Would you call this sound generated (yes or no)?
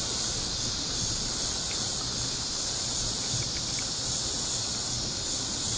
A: yes